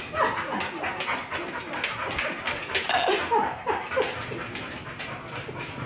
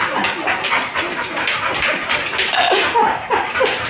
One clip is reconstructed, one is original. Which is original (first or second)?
first